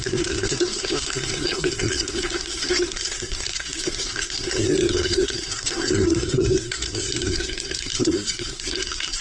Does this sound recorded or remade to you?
remade